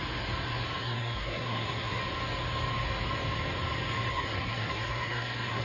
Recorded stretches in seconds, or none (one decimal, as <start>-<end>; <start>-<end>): 0.0-0.8; 2.0-4.1